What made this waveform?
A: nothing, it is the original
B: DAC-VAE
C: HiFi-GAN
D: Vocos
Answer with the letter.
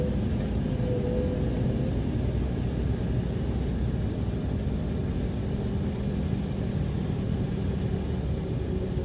A